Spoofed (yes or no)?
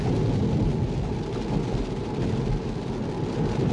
no